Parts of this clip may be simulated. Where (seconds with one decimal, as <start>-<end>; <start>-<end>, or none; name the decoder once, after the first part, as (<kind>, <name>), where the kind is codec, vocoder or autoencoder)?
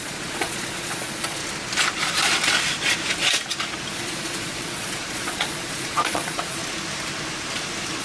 0.0-1.4 (vocoder, Vocos); 3.9-6.6